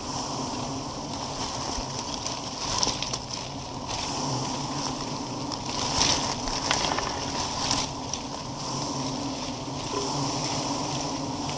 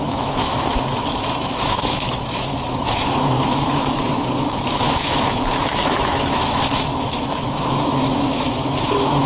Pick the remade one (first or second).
second